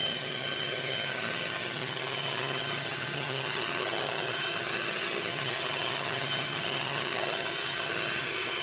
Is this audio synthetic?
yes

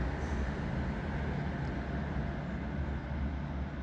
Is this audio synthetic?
no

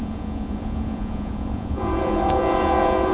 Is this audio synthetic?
yes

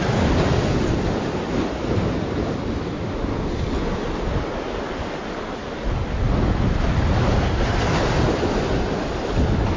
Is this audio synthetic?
no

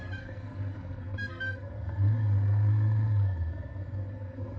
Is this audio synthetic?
yes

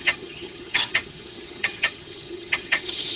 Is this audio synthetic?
yes